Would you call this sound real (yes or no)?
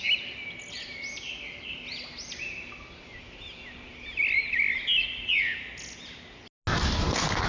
yes